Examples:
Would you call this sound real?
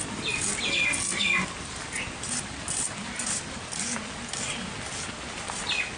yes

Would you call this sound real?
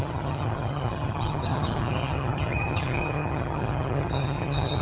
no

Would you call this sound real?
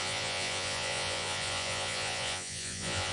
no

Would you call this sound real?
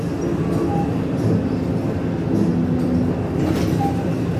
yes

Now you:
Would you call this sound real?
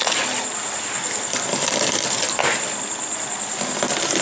yes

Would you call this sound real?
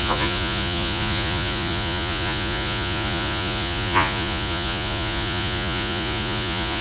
no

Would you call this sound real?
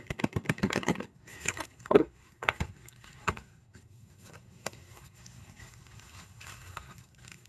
no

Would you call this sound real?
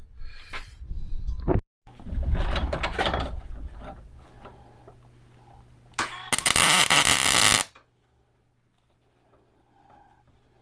yes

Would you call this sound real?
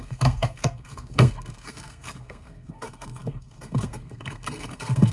no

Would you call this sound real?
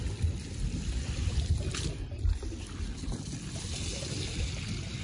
yes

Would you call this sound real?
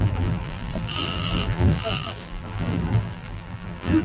no